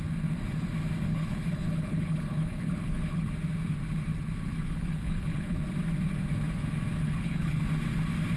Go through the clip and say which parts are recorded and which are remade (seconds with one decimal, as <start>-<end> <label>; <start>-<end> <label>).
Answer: 0.0-1.1 recorded; 1.1-3.3 remade; 3.3-4.5 recorded; 4.5-5.6 remade; 5.6-7.0 recorded; 7.0-7.6 remade; 7.6-8.4 recorded